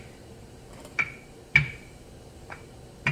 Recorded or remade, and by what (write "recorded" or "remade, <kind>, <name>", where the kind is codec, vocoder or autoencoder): recorded